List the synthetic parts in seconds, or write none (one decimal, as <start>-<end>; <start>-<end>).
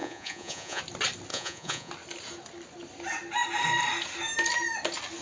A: 0.0-0.8; 1.3-1.9